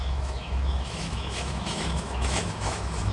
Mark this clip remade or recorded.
remade